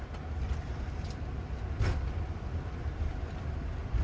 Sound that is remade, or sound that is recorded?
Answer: recorded